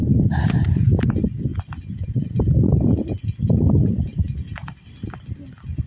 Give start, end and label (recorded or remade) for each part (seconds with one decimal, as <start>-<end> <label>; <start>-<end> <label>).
0.0-1.0 remade; 1.0-1.5 recorded; 1.5-2.7 remade; 2.7-4.1 recorded; 4.1-4.8 remade; 4.8-5.9 recorded